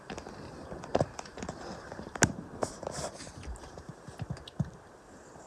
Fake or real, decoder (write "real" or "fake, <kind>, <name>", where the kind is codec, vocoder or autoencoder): fake, vocoder, BigVGAN v2